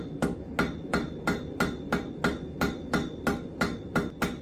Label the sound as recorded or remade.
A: recorded